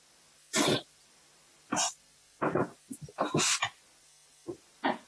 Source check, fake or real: real